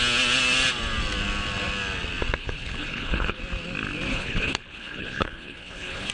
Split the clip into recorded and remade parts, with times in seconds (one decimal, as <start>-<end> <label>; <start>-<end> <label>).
0.0-2.4 recorded; 2.4-3.4 remade; 3.4-4.1 recorded; 4.1-6.1 remade